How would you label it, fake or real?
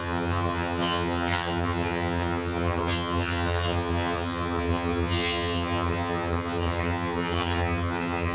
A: fake